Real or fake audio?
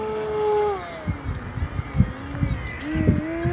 real